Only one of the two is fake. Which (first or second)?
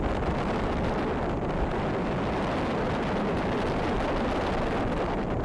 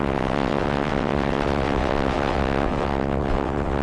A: second